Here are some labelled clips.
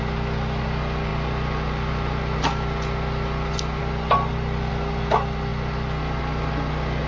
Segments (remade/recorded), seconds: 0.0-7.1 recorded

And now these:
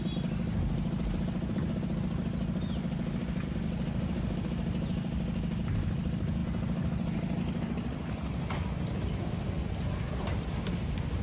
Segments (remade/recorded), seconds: 0.0-11.2 recorded

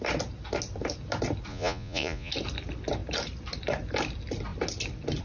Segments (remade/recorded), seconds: 0.0-1.5 recorded; 1.5-2.3 remade; 2.3-5.2 recorded

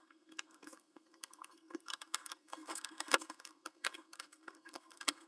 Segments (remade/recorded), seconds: 0.0-5.3 remade

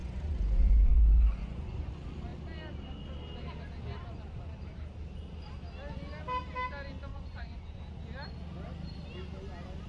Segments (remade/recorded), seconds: 0.0-1.9 remade; 1.9-7.1 recorded; 7.1-7.8 remade; 7.8-9.9 recorded